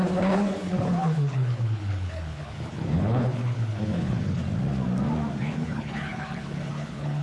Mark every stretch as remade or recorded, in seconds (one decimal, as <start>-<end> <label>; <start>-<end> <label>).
0.0-4.4 remade; 4.4-5.4 recorded; 5.4-7.2 remade